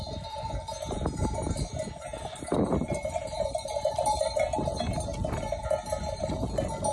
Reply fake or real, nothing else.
real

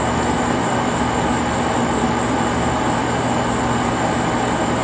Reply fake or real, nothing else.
real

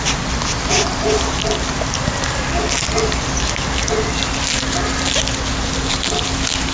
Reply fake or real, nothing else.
real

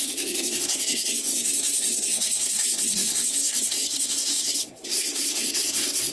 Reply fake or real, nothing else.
fake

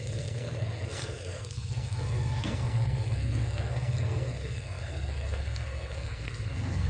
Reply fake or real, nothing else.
fake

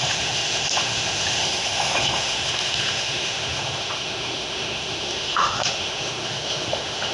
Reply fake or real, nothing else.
fake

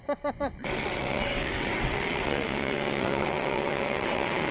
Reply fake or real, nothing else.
fake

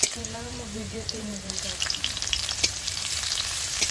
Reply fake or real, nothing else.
fake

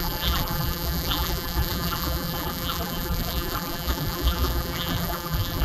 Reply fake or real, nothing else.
fake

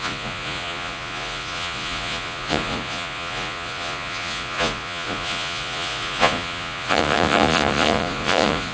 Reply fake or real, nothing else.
fake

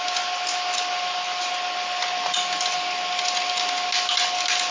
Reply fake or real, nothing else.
real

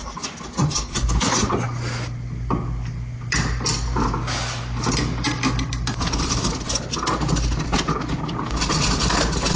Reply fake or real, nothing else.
real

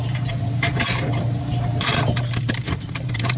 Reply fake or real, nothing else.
fake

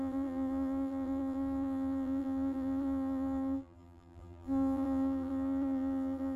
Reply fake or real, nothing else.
fake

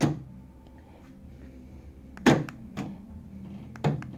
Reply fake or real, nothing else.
real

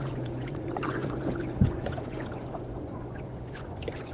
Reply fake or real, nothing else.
fake